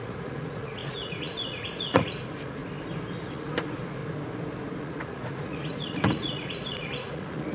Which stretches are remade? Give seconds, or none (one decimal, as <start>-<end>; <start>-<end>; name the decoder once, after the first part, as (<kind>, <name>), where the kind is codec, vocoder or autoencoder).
0.0-2.6 (vocoder, Vocos); 3.2-4.0; 4.8-7.5